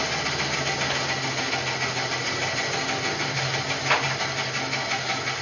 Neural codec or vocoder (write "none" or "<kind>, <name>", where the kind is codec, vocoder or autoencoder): none